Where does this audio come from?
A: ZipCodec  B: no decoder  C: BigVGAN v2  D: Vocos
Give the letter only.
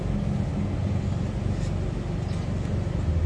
B